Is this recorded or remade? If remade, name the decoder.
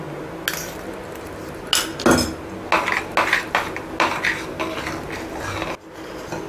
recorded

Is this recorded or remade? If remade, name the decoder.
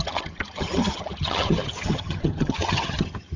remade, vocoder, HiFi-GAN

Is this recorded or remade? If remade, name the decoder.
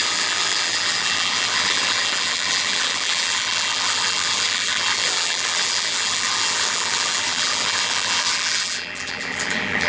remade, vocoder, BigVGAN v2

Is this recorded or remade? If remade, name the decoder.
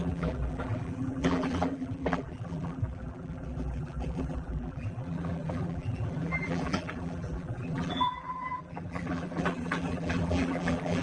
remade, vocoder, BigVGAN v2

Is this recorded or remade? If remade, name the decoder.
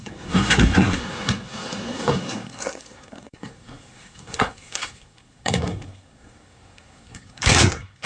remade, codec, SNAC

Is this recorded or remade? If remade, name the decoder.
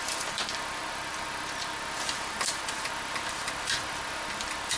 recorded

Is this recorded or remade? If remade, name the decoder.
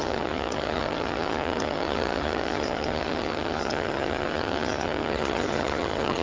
remade, vocoder, HiFi-GAN